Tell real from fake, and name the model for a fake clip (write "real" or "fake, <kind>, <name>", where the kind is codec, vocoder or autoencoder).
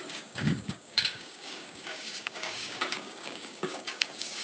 fake, codec, DAC